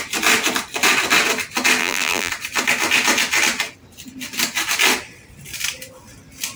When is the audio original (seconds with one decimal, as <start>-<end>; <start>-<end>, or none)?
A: 0.0-1.8; 2.3-6.6